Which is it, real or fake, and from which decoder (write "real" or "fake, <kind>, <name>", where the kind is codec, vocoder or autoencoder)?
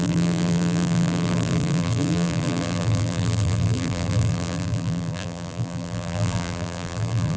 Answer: fake, vocoder, BigVGAN v2